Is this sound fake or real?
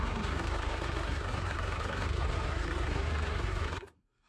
fake